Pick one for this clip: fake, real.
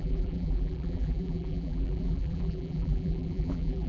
fake